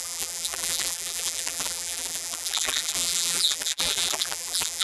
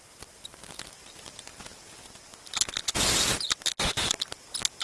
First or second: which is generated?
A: first